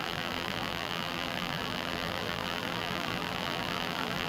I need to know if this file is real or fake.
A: fake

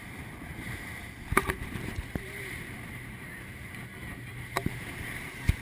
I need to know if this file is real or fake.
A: fake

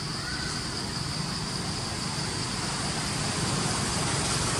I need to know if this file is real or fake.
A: real